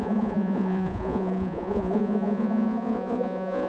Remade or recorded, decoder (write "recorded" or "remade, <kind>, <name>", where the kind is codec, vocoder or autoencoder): remade, vocoder, Vocos